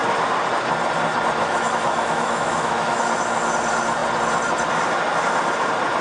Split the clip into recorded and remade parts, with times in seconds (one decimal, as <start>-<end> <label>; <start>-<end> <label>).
0.0-1.4 recorded; 1.4-3.0 remade; 3.0-6.0 recorded